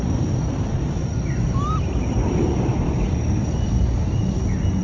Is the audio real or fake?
real